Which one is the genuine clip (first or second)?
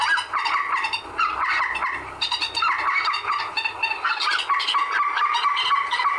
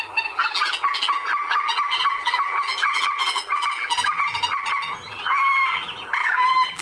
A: first